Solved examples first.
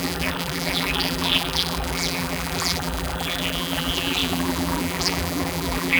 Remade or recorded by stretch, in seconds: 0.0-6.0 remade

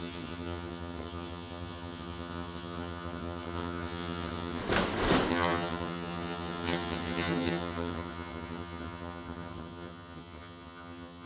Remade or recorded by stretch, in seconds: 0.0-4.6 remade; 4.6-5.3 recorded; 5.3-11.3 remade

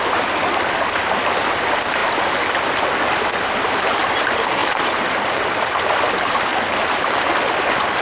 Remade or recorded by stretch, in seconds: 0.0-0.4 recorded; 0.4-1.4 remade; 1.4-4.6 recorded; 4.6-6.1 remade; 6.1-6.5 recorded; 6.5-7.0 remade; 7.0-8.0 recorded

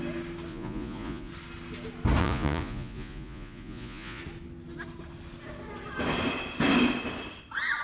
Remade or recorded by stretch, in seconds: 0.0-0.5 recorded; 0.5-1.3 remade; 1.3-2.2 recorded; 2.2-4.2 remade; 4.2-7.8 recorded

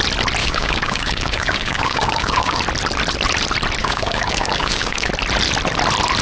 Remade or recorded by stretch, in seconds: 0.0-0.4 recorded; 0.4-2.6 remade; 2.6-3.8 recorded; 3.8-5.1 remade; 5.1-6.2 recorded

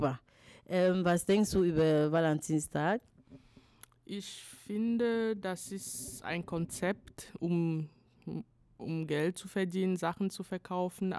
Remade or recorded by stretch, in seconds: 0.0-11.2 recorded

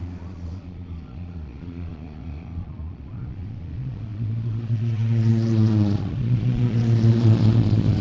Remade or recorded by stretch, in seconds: 0.0-8.0 remade

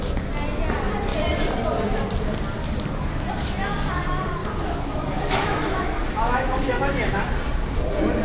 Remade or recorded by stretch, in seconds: 0.0-4.4 recorded; 4.4-7.2 remade; 7.2-8.2 recorded